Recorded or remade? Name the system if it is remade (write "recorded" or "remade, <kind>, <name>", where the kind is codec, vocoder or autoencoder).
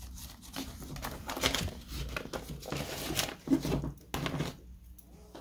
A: recorded